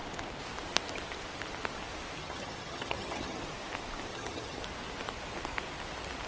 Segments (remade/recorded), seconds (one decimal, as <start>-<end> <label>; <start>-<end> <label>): 0.0-2.2 recorded; 2.2-3.4 remade; 3.4-4.1 recorded; 4.1-4.6 remade; 4.6-6.3 recorded

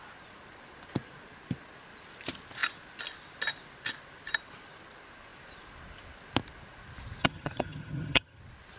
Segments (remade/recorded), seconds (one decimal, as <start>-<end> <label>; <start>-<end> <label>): 0.0-7.2 recorded; 7.2-8.4 remade; 8.4-8.8 recorded

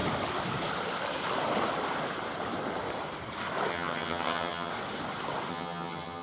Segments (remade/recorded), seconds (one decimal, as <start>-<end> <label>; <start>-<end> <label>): 0.0-3.7 recorded; 3.7-4.7 remade; 4.7-5.5 recorded; 5.5-6.2 remade

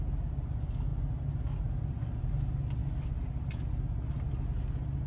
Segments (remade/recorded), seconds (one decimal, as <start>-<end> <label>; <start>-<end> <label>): 0.0-5.1 recorded

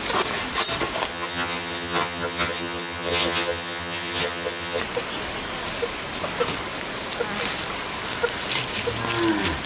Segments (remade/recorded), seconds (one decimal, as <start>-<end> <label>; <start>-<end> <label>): 0.0-1.1 recorded; 1.1-4.8 remade; 4.8-9.7 recorded

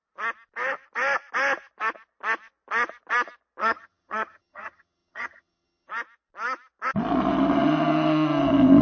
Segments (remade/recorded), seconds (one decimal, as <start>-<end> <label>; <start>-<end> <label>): 0.0-3.6 recorded; 3.6-5.9 remade; 5.9-8.8 recorded

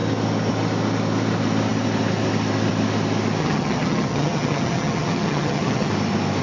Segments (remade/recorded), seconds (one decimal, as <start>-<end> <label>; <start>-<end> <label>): 0.0-3.4 recorded; 3.4-5.9 remade; 5.9-6.4 recorded

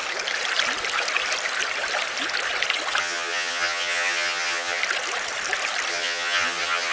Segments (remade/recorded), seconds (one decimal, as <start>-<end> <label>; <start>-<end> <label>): 0.0-3.0 recorded; 3.0-4.8 remade; 4.8-5.9 recorded; 5.9-6.9 remade